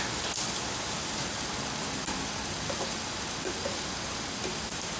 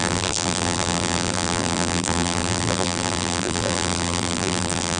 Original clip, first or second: first